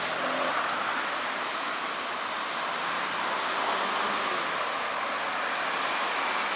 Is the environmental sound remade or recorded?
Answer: recorded